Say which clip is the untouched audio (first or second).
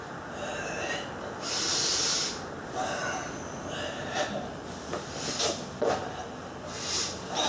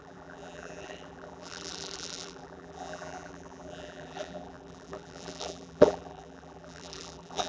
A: first